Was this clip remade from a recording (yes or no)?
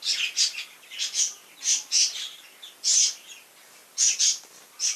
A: no